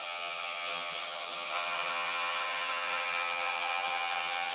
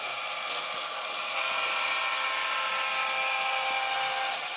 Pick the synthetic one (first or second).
first